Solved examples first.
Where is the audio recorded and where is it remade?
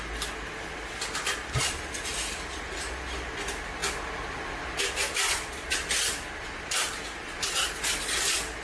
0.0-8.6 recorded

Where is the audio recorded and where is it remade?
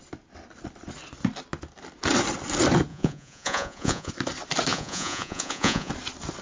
0.0-2.9 recorded; 2.9-4.1 remade; 4.1-4.7 recorded; 4.7-5.9 remade; 5.9-6.4 recorded